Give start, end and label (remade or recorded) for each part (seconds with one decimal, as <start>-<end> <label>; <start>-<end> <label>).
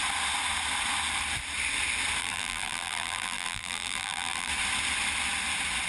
0.0-2.2 recorded; 2.2-4.5 remade; 4.5-5.9 recorded